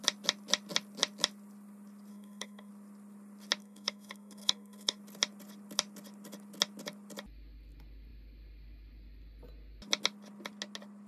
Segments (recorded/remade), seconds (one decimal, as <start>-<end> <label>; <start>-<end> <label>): 0.0-2.1 recorded; 2.1-2.7 remade; 2.7-3.6 recorded; 3.6-5.0 remade; 5.0-11.1 recorded